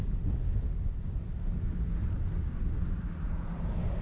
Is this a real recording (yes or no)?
yes